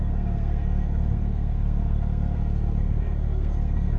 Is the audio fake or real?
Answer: fake